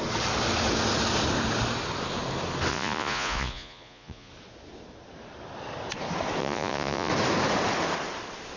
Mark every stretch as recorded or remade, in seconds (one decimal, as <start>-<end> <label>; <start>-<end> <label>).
0.0-2.7 recorded; 2.7-4.3 remade; 4.3-6.4 recorded; 6.4-7.1 remade; 7.1-8.6 recorded

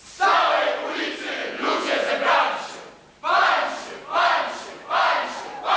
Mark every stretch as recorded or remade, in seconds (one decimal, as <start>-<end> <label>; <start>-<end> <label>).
0.0-1.4 recorded; 1.4-2.1 remade; 2.1-5.8 recorded

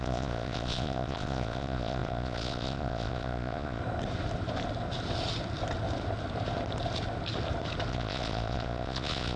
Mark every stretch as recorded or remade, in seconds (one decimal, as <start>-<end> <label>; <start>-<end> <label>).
0.0-3.8 remade; 3.8-7.9 recorded; 7.9-9.4 remade